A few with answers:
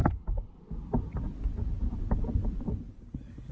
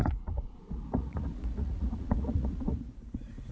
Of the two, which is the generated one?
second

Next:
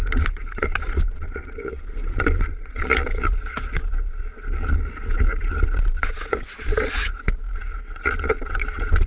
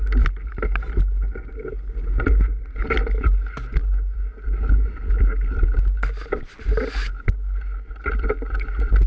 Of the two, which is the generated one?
first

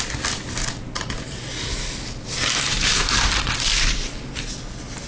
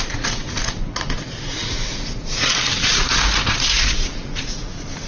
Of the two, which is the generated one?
second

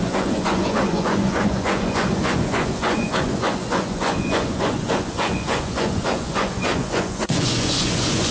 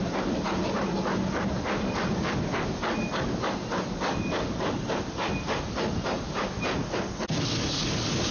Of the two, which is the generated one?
first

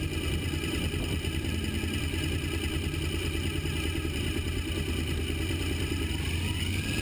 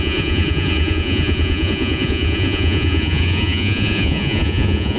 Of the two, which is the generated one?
second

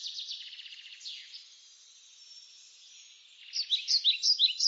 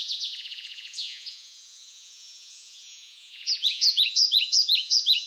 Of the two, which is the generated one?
second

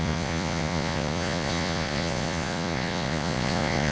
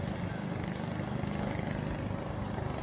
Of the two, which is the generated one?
first